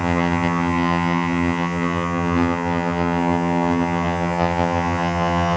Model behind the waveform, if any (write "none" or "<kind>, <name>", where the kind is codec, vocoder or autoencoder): vocoder, HiFi-GAN